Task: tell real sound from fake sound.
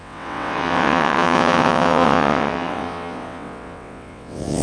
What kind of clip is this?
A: fake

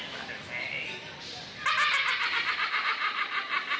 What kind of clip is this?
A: real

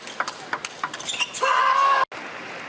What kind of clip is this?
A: real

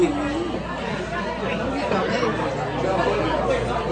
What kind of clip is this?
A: real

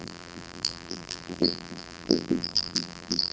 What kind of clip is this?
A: fake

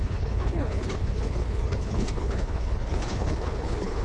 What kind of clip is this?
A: fake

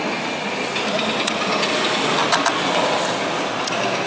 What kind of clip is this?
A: real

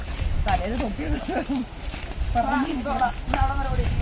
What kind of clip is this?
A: real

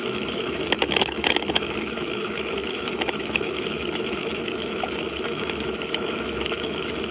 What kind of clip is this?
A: fake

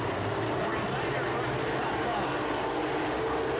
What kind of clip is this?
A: real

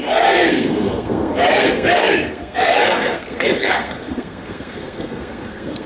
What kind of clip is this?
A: fake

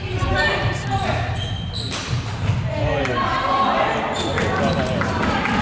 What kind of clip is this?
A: real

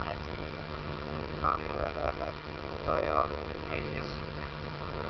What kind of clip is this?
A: fake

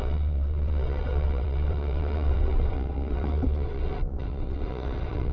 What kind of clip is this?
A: fake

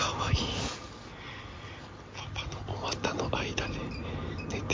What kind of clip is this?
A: real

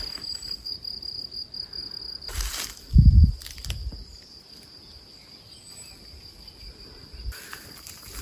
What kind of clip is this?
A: real